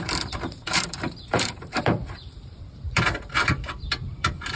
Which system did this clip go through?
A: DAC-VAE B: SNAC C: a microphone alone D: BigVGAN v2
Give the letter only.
D